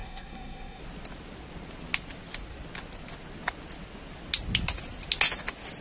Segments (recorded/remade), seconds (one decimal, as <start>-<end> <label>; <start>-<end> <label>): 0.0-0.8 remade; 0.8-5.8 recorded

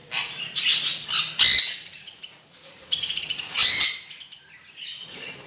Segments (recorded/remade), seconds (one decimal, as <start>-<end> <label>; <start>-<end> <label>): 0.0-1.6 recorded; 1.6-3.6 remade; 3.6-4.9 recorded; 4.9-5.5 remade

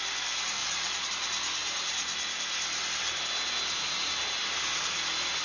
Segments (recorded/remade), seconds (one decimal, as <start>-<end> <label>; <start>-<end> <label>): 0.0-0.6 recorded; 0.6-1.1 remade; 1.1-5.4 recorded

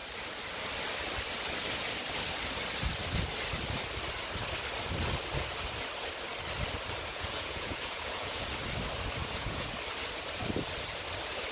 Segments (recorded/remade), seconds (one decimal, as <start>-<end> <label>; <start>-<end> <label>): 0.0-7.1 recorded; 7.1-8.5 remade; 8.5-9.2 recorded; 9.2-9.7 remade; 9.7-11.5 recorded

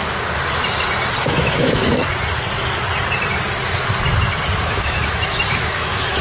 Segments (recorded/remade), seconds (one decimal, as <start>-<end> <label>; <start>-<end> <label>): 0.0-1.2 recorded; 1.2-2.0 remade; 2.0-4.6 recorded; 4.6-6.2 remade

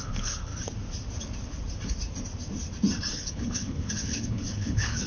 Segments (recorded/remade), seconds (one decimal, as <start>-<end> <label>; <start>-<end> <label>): 0.0-0.5 remade; 0.5-3.1 recorded; 3.1-5.1 remade

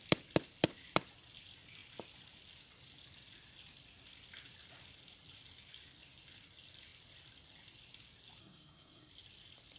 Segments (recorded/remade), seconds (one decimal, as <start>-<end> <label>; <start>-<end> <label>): 0.0-8.4 recorded; 8.4-9.1 remade; 9.1-9.8 recorded